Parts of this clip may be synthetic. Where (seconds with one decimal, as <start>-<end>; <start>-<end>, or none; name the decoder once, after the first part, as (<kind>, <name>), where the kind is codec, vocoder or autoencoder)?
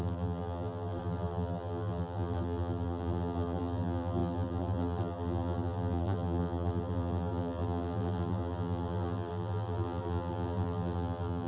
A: 0.0-11.5 (vocoder, BigVGAN v2)